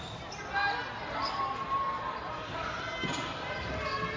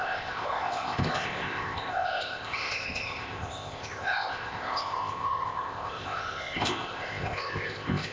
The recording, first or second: first